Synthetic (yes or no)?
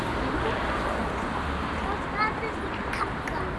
no